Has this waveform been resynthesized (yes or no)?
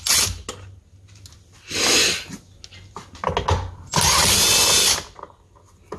no